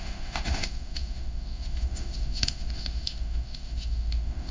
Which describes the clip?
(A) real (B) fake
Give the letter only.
B